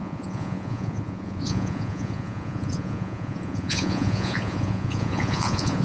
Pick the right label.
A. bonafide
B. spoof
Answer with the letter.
B